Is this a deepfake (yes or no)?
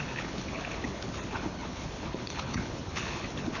yes